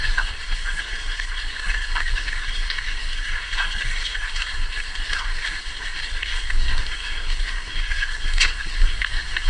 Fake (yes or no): yes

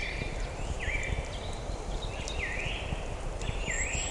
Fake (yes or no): yes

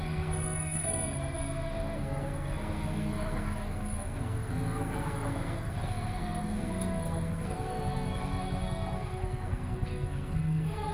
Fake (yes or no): yes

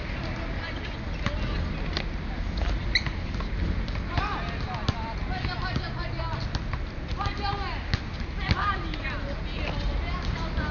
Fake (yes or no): no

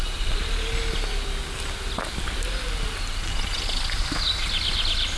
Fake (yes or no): no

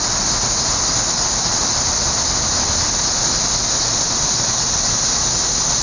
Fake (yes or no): no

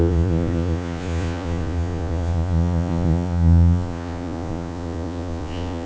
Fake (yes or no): yes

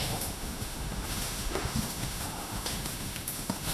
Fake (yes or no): yes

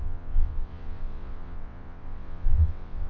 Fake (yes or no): yes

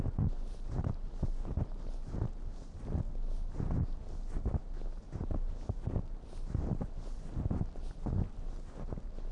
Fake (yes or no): no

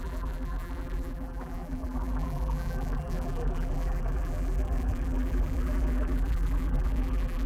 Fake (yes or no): yes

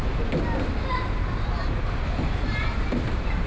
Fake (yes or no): no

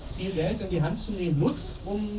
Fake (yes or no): yes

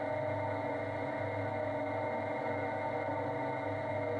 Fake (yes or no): no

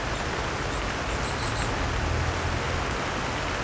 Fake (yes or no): no